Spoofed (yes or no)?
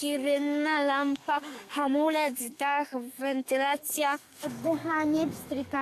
yes